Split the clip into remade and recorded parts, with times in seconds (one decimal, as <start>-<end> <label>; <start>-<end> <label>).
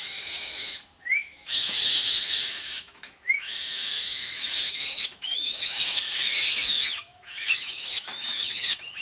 0.0-9.0 remade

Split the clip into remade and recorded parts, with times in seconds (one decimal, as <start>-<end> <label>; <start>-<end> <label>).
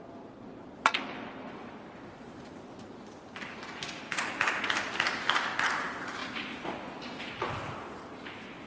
0.0-8.7 recorded